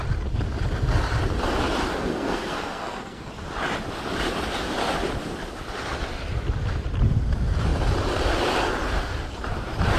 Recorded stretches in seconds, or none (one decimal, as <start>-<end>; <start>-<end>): 0.0-2.1; 3.3-10.0